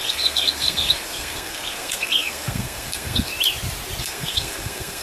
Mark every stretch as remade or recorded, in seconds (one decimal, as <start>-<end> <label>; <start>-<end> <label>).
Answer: 0.0-3.3 remade; 3.3-4.0 recorded; 4.0-5.0 remade